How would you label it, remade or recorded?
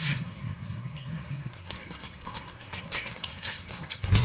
remade